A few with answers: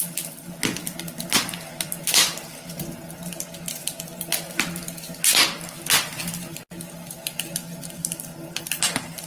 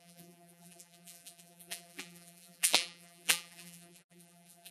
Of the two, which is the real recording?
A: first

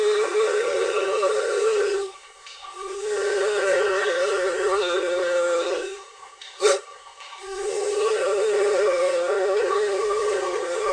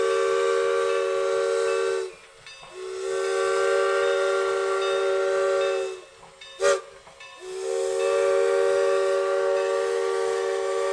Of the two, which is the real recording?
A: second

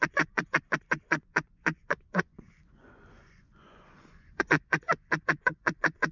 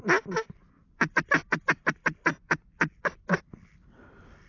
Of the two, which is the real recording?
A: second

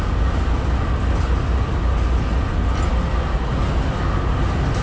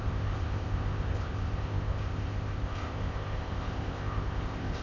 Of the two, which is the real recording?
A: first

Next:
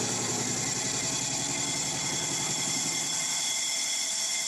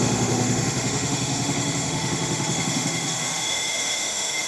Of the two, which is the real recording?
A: first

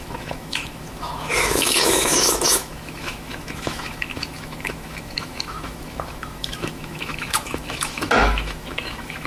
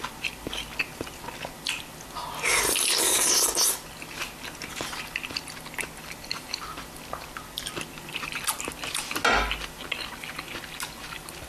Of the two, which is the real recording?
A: second